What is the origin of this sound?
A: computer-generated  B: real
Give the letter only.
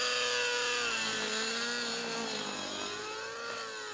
B